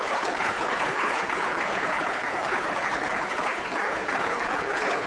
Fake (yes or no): yes